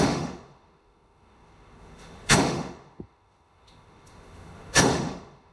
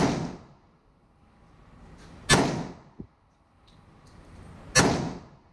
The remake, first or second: first